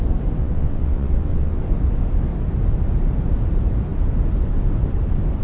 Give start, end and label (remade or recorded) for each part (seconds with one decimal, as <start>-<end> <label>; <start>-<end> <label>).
0.0-0.4 recorded; 0.4-1.6 remade; 1.6-5.4 recorded